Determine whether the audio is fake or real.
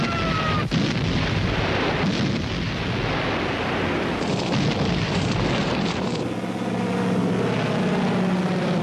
real